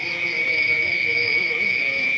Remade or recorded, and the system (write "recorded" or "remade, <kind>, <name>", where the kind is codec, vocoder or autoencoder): remade, autoencoder, DAC-VAE